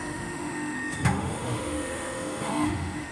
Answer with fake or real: fake